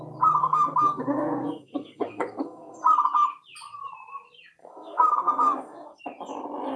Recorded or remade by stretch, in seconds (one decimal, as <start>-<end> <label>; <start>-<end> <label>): 0.0-0.4 recorded; 0.4-2.8 remade; 2.8-4.6 recorded; 4.6-6.0 remade; 6.0-6.8 recorded